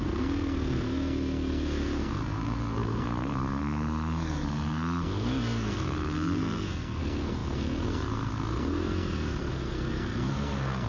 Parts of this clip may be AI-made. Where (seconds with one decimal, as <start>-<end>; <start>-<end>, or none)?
0.0-10.9